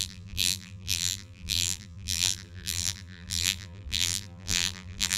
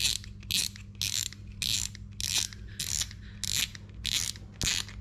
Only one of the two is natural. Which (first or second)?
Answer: second